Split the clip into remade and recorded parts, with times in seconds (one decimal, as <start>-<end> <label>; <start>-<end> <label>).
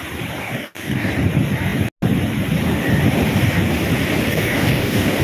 0.0-0.4 recorded; 0.4-1.1 remade; 1.1-4.3 recorded; 4.3-5.2 remade